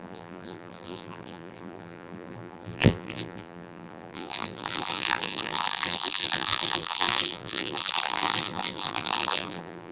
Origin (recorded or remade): remade